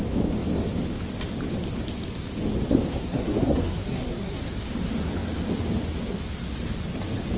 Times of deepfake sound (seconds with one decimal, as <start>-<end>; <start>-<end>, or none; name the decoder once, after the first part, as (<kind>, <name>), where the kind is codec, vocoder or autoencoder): 2.9-4.4 (codec, SNAC)